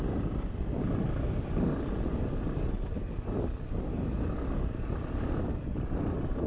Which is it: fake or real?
fake